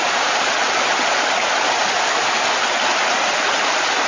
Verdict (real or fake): real